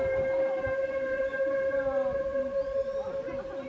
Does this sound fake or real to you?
real